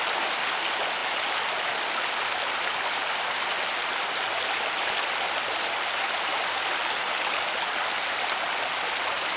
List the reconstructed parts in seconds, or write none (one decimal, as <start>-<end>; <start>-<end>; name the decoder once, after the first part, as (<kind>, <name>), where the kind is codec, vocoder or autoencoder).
none